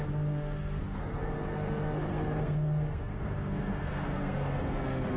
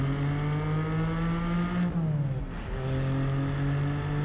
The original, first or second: second